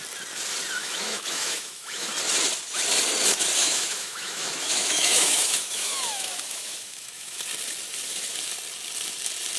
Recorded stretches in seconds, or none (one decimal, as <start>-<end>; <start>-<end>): 0.0-0.8; 2.1-3.6; 7.4-9.6